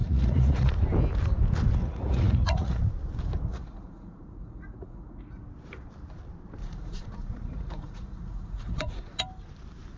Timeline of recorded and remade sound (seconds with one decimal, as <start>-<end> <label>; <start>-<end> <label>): 0.0-0.7 remade; 0.7-1.8 recorded; 1.8-2.8 remade; 2.8-3.5 recorded; 3.5-5.4 remade; 5.4-6.6 recorded; 6.6-9.2 remade; 9.2-10.0 recorded